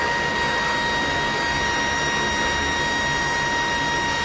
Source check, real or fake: real